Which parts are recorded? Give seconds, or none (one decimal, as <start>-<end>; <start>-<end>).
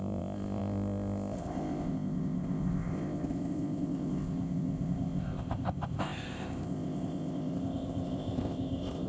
none